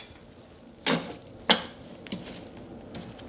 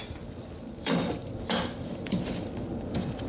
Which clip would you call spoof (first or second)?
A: second